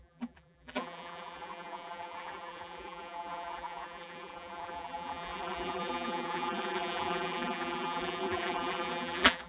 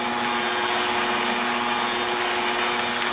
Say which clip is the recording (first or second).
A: second